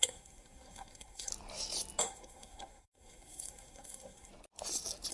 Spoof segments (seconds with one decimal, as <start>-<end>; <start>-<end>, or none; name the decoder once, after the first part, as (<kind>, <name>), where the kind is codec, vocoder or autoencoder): 0.0-1.3 (codec, SNAC); 2.0-4.3